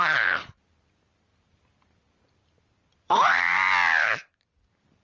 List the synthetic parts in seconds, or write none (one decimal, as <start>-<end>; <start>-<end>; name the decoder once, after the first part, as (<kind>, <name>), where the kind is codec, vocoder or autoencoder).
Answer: none